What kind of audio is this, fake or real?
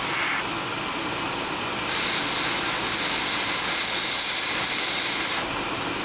real